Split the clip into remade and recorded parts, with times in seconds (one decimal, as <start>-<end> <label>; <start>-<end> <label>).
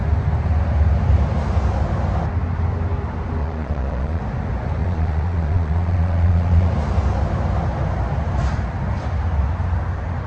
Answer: 0.0-3.4 recorded; 3.4-4.2 remade; 4.2-4.8 recorded; 4.8-6.7 remade; 6.7-10.3 recorded